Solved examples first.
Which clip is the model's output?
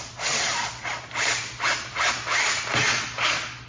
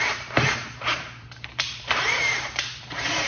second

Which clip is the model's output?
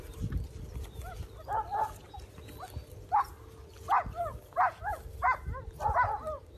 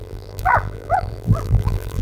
second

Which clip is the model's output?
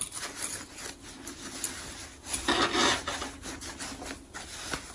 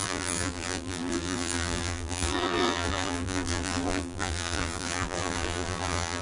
second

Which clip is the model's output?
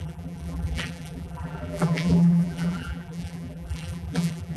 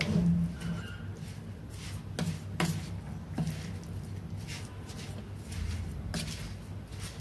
first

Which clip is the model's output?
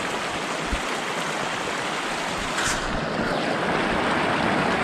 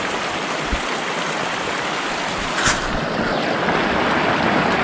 second